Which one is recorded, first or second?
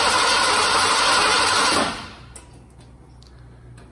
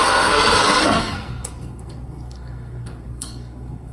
first